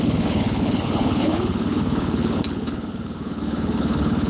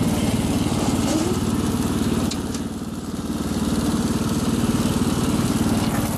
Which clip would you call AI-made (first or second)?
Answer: first